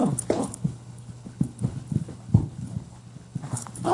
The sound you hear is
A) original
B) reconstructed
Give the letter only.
B